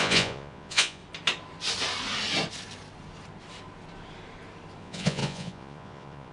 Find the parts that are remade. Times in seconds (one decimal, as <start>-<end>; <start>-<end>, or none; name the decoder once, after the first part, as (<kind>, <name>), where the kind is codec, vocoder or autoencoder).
0.0-1.0 (vocoder, Vocos); 4.8-6.3